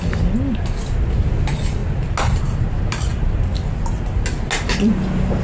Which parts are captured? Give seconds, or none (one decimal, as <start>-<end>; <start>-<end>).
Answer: 0.0-5.4

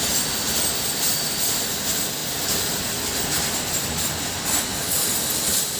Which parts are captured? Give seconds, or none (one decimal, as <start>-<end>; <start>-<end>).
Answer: 0.0-4.7

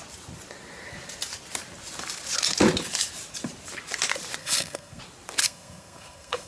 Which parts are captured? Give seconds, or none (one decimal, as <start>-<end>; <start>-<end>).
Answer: 0.0-4.4; 5.0-5.4

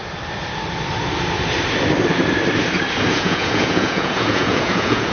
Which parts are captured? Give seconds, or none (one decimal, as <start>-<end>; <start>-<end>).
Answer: 0.0-3.1

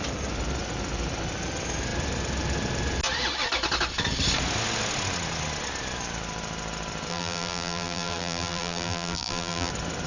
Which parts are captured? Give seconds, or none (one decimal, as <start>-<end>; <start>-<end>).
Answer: 0.0-7.1; 9.7-10.1

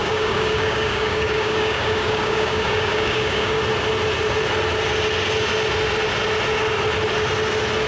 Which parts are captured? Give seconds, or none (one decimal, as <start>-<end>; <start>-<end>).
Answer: 3.6-7.9

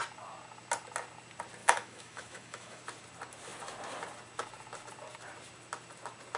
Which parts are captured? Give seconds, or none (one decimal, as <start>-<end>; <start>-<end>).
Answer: 0.0-1.6; 2.8-6.4

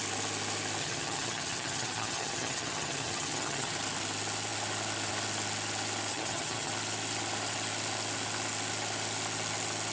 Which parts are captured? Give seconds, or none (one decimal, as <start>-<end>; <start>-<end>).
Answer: 0.0-0.8; 3.7-6.1; 6.7-9.9